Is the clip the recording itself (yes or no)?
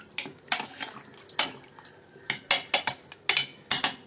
yes